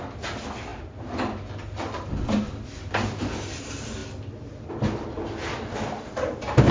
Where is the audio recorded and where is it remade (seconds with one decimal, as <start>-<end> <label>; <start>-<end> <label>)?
0.0-6.7 recorded